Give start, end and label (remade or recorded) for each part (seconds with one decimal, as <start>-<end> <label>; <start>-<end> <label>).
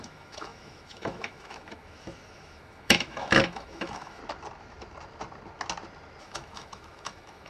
0.0-4.2 remade; 4.2-6.2 recorded; 6.2-7.5 remade